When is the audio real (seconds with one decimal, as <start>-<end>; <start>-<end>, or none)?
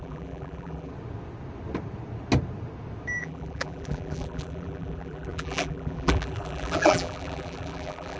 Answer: 0.9-3.2